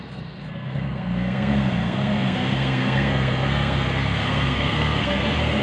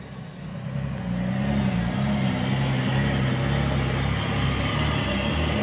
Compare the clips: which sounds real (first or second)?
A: second